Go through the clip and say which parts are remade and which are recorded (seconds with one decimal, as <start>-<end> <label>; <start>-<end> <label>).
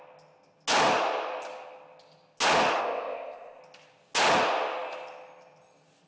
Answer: 0.0-2.8 recorded; 2.8-3.6 remade; 3.6-6.1 recorded